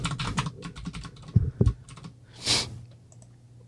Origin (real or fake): real